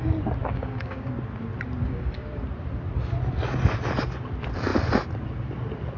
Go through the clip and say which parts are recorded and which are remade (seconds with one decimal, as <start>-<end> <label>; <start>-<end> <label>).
0.0-0.4 recorded; 0.4-1.1 remade; 1.1-1.8 recorded; 1.8-2.4 remade; 2.4-6.0 recorded